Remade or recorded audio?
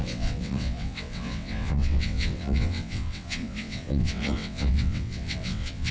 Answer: remade